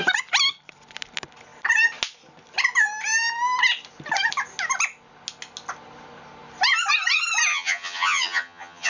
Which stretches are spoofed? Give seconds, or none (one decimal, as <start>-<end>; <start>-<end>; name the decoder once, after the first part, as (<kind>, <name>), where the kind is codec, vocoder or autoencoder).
7.5-8.9 (vocoder, HiFi-GAN)